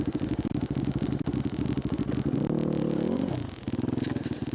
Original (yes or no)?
yes